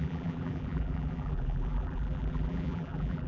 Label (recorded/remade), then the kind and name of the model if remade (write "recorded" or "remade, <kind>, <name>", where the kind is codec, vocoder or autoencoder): remade, vocoder, BigVGAN v2